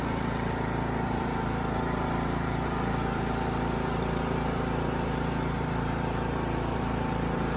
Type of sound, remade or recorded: remade